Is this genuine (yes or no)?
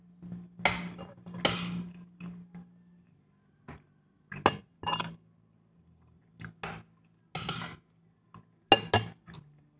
yes